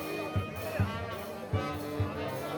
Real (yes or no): yes